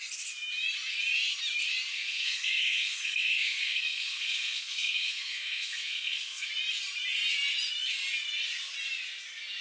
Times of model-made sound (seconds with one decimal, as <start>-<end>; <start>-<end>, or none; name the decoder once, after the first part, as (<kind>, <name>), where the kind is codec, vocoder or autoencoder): 1.9-6.5 (codec, SNAC)